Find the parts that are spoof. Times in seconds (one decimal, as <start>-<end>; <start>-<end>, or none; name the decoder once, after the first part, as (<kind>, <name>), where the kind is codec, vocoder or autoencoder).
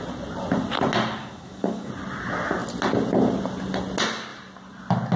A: 1.2-1.9 (autoencoder, DAC-VAE)